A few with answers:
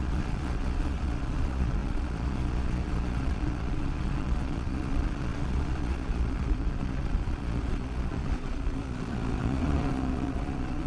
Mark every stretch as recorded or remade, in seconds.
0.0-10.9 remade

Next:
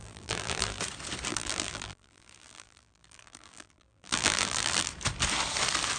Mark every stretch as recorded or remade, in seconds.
0.0-0.8 remade; 0.8-1.3 recorded; 1.3-4.9 remade; 4.9-6.0 recorded

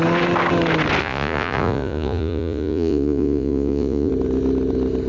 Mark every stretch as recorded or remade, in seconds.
0.0-1.0 recorded; 1.0-4.1 remade; 4.1-5.1 recorded

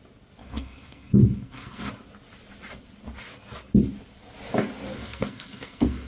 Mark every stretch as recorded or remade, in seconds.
0.0-0.4 recorded; 0.4-1.9 remade; 1.9-4.9 recorded; 4.9-6.1 remade

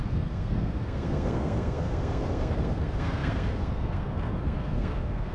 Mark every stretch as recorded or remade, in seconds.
0.0-5.3 remade

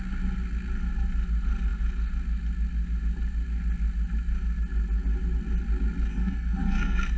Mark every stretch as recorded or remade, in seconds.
0.0-6.1 recorded; 6.1-7.2 remade

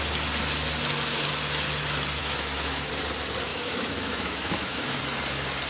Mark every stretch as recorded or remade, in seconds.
0.0-2.2 recorded; 2.2-2.9 remade; 2.9-3.5 recorded; 3.5-5.0 remade; 5.0-5.7 recorded